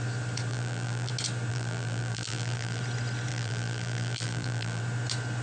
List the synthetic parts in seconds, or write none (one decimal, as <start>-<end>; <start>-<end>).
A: 0.5-1.1; 1.5-2.8; 3.3-4.8